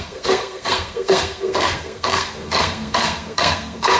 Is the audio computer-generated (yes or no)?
yes